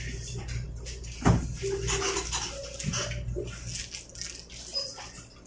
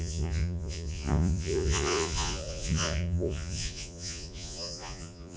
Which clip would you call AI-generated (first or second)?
second